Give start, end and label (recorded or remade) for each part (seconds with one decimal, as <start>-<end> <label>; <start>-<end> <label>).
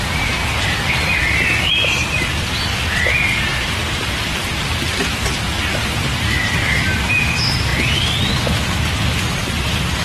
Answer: 0.0-0.4 recorded; 0.4-1.7 remade; 1.7-3.5 recorded; 3.5-7.2 remade; 7.2-10.0 recorded